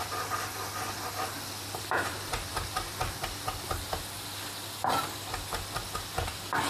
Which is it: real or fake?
real